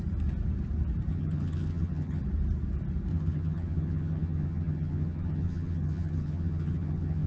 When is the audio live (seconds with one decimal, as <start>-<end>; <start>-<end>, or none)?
0.0-1.1; 2.2-3.1